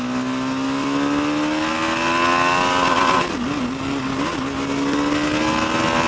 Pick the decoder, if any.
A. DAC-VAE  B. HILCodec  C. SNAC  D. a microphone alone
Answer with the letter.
D